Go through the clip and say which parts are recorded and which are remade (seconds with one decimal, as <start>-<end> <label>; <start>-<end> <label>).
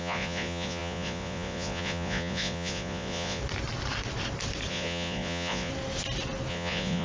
0.0-3.4 remade; 3.4-4.7 recorded; 4.7-5.7 remade; 5.7-6.5 recorded; 6.5-7.0 remade